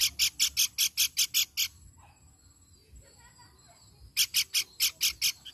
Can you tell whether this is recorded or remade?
recorded